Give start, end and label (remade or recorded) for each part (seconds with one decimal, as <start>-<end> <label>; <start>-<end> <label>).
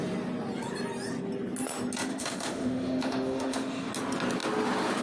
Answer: 0.0-2.1 recorded; 2.1-3.9 remade; 3.9-5.0 recorded